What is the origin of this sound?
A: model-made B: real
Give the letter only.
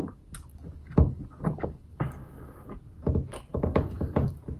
A